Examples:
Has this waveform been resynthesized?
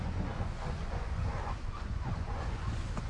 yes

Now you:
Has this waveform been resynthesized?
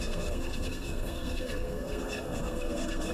yes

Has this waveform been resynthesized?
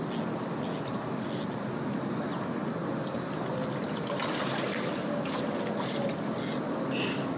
no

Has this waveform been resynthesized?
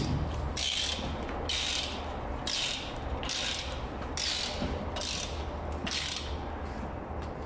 no